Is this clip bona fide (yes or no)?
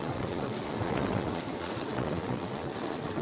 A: no